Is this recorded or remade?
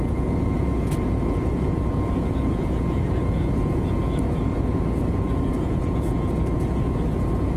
remade